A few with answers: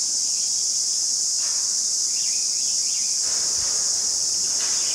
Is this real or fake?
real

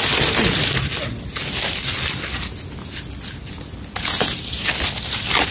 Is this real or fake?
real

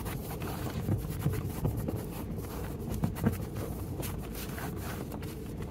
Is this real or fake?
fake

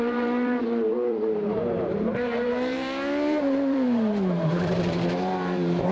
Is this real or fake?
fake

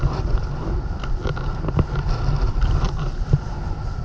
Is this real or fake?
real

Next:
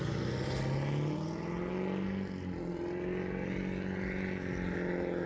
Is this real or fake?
real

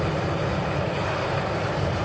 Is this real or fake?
fake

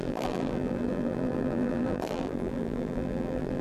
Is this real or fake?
fake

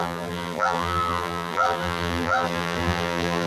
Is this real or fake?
fake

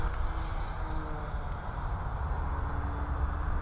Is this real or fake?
real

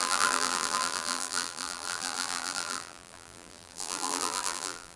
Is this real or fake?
fake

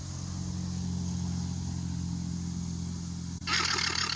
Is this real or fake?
real